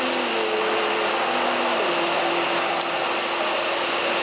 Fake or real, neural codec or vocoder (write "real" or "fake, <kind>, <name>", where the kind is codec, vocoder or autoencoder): real